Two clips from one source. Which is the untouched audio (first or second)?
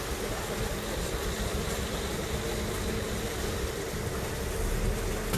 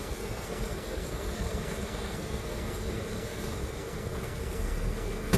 first